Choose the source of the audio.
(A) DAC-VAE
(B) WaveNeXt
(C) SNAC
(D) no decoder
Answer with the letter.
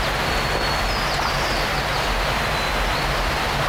D